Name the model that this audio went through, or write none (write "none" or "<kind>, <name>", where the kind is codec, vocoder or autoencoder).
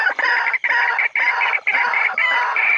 none